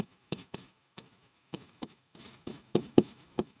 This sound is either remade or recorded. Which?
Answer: remade